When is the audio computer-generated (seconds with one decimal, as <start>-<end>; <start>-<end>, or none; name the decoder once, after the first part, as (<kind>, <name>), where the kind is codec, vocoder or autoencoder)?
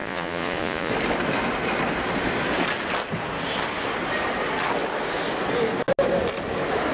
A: 0.0-0.9 (vocoder, Vocos)